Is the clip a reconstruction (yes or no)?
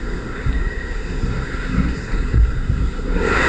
yes